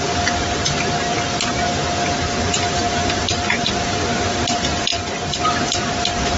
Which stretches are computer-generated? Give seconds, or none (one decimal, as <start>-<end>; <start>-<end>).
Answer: 4.9-5.4